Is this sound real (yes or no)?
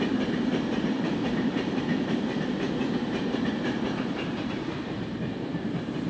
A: no